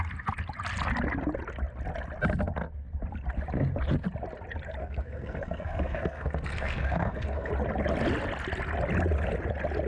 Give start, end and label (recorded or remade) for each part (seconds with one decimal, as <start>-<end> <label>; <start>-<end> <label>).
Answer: 0.0-4.8 recorded; 4.8-7.5 remade; 7.5-9.9 recorded